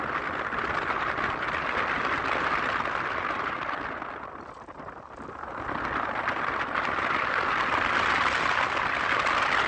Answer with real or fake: real